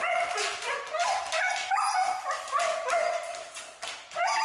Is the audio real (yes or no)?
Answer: yes